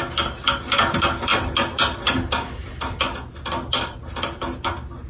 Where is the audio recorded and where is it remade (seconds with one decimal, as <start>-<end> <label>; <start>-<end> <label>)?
0.0-5.1 recorded